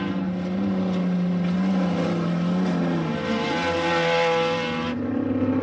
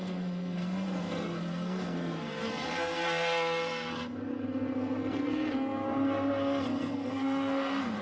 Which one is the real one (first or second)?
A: first